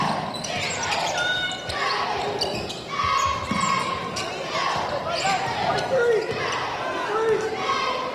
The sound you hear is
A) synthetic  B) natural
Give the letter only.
B